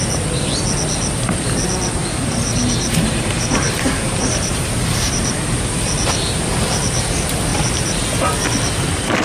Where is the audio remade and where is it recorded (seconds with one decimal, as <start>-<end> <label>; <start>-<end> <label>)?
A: 0.0-2.0 recorded; 2.0-5.7 remade; 5.7-7.5 recorded; 7.5-8.0 remade; 8.0-9.2 recorded